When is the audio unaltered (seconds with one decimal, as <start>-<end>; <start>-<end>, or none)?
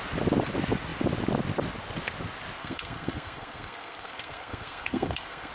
0.0-2.6